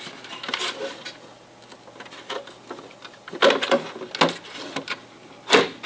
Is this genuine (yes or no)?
yes